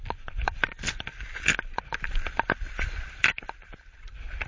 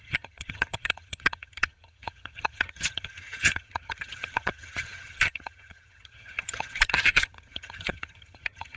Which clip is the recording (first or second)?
first